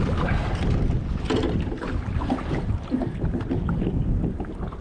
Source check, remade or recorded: recorded